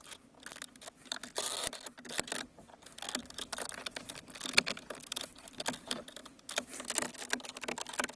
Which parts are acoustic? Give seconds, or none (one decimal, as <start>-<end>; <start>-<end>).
0.0-8.2